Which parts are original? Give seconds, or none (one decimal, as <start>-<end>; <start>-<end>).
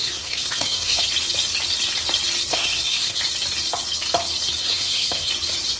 1.0-2.5; 3.2-4.6; 5.3-5.8